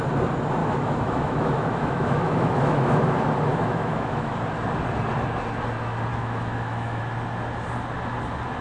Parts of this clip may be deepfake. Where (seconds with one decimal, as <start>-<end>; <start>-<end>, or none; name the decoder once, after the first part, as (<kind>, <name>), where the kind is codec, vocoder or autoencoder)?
0.6-3.1 (autoencoder, DAC-VAE); 3.5-4.3; 6.1-7.0